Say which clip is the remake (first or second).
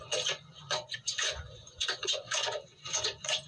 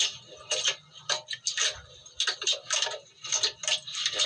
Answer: first